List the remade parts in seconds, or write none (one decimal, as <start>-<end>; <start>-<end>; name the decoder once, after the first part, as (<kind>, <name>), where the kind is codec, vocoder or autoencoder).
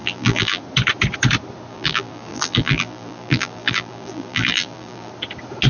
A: 0.0-0.6 (vocoder, BigVGAN v2); 1.7-5.1